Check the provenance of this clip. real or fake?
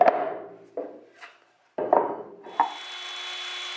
real